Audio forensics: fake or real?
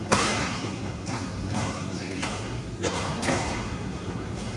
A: fake